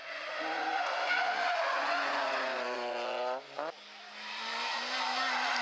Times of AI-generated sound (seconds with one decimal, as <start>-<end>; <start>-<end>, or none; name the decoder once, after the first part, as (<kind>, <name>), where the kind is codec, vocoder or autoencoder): 0.0-3.4 (vocoder, Vocos)